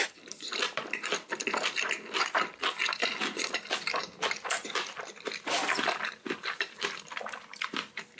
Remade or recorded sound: remade